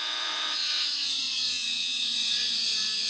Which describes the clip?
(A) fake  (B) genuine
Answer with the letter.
A